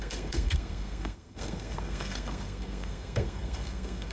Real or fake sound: fake